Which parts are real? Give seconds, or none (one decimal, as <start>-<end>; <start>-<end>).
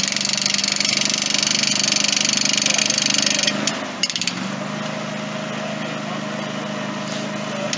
0.0-7.8